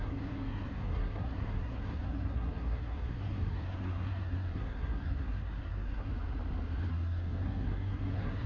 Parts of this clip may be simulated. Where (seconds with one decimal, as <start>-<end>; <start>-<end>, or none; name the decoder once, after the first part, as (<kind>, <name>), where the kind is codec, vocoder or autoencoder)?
0.0-6.1 (codec, SNAC); 6.9-8.5